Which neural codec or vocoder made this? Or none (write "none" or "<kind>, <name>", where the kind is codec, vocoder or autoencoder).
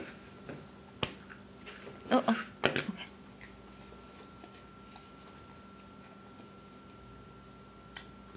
none